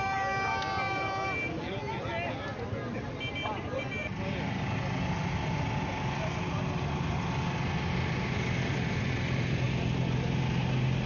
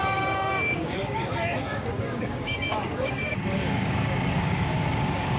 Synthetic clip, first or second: second